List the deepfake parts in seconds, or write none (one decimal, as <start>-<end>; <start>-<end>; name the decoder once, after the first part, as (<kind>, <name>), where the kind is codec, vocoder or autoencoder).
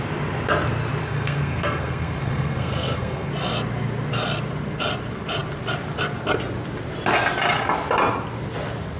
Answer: 1.0-3.3 (codec, SNAC)